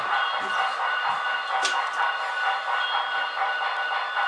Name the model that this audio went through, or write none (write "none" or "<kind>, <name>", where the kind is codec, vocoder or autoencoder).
none